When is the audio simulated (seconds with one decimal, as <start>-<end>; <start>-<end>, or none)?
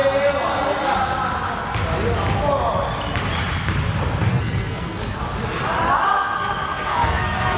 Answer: 4.3-5.2; 6.1-7.6